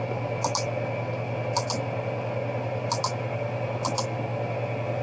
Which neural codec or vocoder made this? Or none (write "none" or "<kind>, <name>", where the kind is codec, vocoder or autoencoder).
none